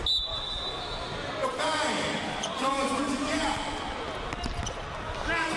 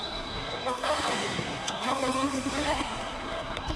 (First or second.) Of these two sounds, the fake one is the second